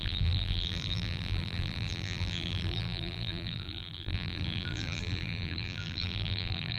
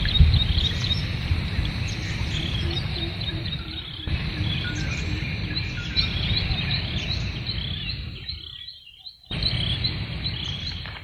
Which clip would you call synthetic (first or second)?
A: first